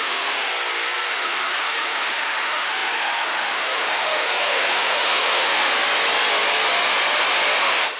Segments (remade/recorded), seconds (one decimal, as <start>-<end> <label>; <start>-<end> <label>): 0.0-0.5 remade; 0.5-1.1 recorded; 1.1-5.7 remade; 5.7-7.6 recorded; 7.6-8.0 remade